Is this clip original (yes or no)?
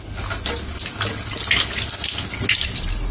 yes